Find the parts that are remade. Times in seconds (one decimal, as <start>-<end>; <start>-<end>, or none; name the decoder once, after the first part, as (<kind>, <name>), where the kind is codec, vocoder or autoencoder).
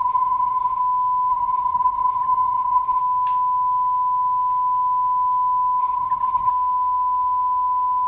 0.0-0.8 (codec, HILCodec); 1.3-3.0; 5.8-6.5